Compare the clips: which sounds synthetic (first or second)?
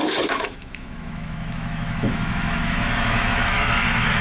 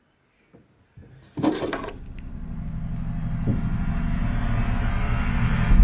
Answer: first